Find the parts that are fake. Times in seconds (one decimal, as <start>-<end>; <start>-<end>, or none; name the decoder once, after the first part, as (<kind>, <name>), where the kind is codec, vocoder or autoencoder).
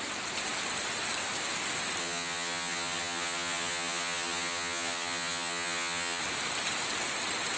2.0-6.2 (vocoder, HiFi-GAN)